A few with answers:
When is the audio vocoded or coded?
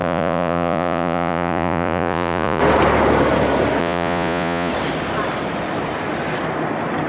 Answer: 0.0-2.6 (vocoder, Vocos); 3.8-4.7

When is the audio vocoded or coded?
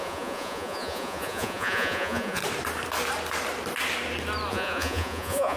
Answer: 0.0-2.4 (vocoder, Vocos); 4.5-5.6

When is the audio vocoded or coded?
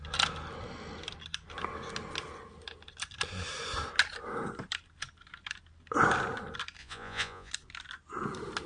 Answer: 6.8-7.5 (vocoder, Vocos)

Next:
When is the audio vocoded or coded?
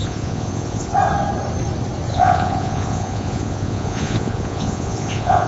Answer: 0.0-0.9 (vocoder, Vocos); 2.1-5.5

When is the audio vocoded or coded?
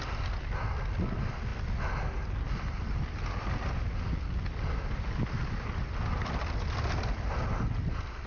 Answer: none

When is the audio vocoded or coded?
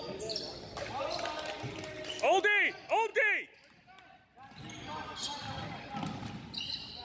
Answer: none